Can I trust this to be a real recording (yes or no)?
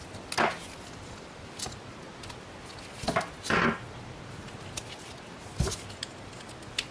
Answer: yes